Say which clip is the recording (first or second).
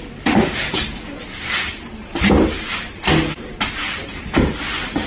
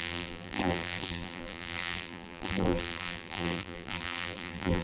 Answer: first